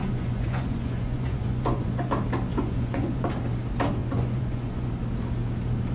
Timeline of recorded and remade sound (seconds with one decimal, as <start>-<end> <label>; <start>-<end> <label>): 0.0-2.1 remade; 2.1-2.5 recorded; 2.5-3.3 remade; 3.3-4.0 recorded; 4.0-4.9 remade; 4.9-5.9 recorded

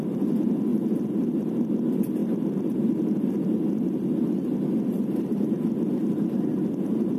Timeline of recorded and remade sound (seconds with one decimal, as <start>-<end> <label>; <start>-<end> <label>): 0.0-7.2 recorded

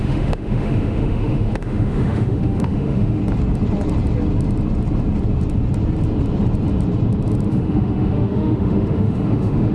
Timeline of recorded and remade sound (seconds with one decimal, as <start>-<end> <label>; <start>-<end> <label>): 0.0-3.2 remade; 3.2-7.5 recorded; 7.5-9.7 remade

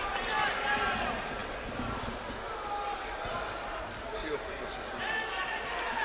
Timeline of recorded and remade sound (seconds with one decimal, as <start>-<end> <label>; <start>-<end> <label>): 0.0-6.0 recorded

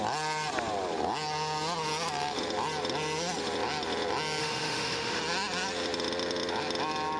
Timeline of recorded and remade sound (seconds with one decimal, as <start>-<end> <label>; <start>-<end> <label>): 0.0-4.4 recorded; 4.4-5.2 remade; 5.2-7.2 recorded

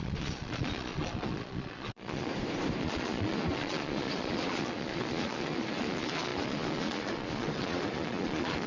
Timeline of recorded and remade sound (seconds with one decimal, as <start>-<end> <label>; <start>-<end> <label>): 0.0-2.3 remade; 2.3-2.8 recorded; 2.8-8.7 remade

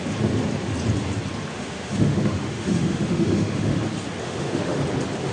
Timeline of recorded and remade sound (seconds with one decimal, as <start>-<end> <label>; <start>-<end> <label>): 0.0-1.5 recorded; 1.5-3.8 remade; 3.8-4.2 recorded; 4.2-4.8 remade; 4.8-5.3 recorded